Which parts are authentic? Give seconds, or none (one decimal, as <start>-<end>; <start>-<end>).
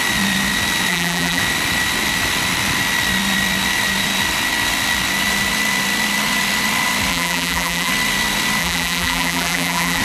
0.0-0.9; 1.4-7.1; 7.9-8.6